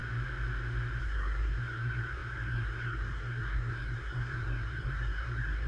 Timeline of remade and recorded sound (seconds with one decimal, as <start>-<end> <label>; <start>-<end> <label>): 0.0-1.0 recorded; 1.0-5.7 remade